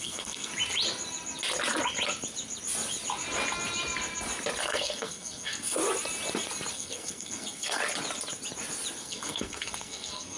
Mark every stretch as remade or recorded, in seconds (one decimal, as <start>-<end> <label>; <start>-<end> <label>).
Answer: 0.0-0.5 remade; 0.5-4.6 recorded; 4.6-5.8 remade; 5.8-6.7 recorded; 6.7-7.8 remade; 7.8-9.0 recorded; 9.0-10.4 remade